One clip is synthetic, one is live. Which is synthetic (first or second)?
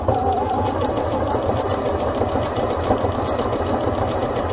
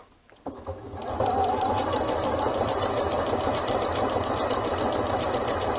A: first